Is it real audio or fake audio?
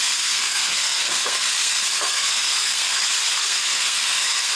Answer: fake